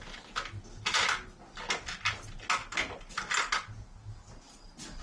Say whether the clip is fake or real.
real